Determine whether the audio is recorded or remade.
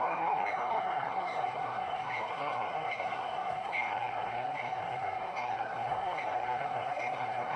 remade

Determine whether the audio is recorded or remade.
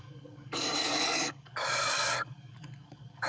remade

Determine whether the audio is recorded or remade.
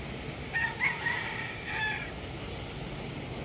recorded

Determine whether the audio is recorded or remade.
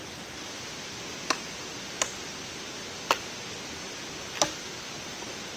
recorded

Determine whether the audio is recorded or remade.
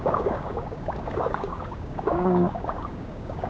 remade